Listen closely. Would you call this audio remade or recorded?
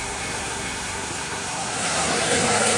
remade